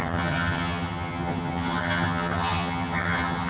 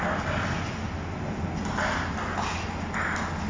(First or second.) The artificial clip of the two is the first